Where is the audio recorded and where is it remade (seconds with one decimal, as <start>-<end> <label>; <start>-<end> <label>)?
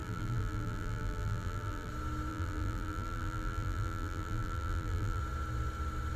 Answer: 0.0-1.9 remade; 1.9-2.3 recorded; 2.3-5.2 remade; 5.2-6.2 recorded